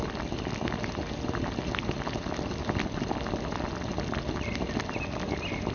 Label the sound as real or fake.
real